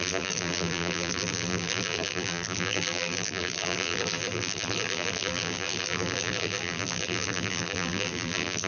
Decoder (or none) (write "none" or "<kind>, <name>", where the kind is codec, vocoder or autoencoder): vocoder, BigVGAN v2